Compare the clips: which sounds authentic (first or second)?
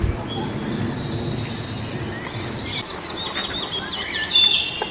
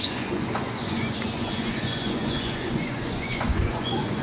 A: first